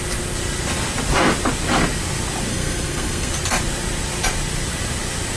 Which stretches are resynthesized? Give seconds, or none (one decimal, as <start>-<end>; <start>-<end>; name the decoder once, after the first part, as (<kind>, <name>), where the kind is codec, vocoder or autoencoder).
2.5-3.3 (codec, SNAC)